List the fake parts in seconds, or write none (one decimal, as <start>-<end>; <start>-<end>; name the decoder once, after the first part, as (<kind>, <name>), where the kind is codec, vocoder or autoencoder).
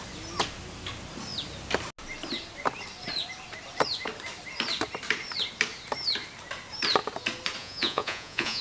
7.6-8.6 (vocoder, Vocos)